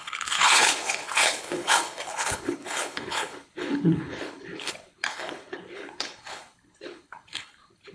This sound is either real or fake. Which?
fake